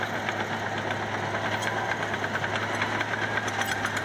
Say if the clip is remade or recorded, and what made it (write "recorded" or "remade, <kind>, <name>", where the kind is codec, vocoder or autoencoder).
recorded